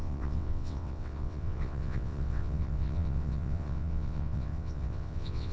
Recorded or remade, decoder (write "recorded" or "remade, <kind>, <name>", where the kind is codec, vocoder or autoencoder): remade, vocoder, WaveNeXt